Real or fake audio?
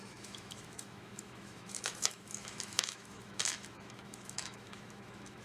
fake